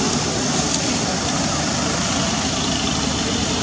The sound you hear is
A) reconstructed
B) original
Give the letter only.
B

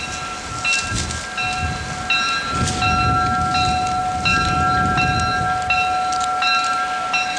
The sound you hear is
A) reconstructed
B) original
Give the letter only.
B